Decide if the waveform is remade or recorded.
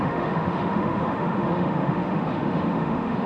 remade